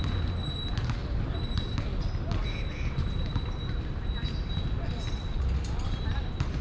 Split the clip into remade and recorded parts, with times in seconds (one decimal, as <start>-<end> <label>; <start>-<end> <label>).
0.0-6.6 recorded